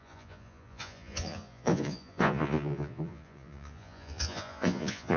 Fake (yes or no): yes